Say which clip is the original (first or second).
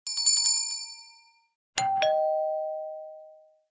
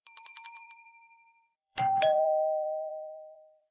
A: first